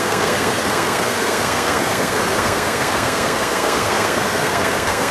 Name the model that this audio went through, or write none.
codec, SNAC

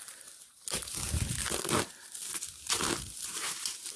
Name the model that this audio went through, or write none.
vocoder, BigVGAN v2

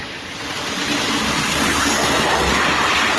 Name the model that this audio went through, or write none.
none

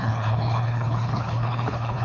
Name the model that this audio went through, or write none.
codec, HILCodec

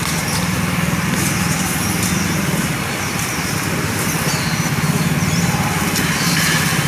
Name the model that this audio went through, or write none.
none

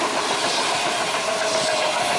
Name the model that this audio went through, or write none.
none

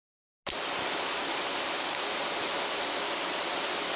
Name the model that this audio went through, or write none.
none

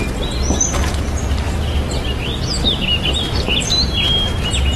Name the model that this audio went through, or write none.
none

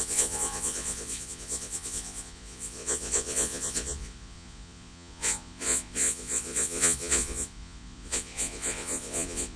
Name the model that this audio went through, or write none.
vocoder, Vocos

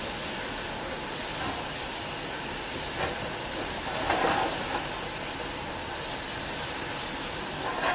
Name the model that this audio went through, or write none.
none